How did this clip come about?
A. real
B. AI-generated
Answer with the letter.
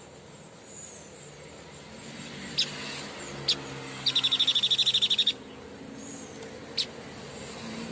A